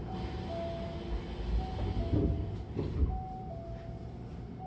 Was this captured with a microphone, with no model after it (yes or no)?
yes